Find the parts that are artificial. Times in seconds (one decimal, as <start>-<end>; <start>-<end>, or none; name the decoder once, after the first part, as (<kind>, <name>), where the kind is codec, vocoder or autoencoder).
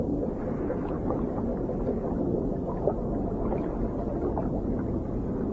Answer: none